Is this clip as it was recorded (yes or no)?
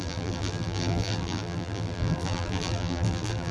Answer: no